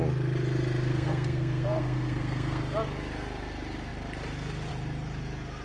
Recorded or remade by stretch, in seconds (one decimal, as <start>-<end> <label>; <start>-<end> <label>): 0.0-0.9 recorded; 0.9-2.6 remade; 2.6-5.6 recorded